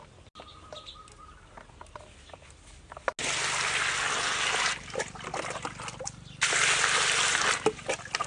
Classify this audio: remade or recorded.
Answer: recorded